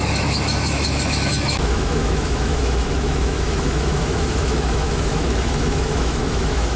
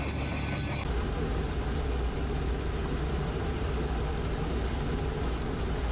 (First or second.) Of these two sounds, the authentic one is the second